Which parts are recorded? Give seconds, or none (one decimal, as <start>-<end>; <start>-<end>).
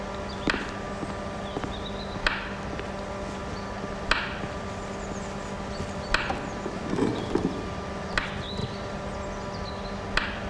0.0-10.5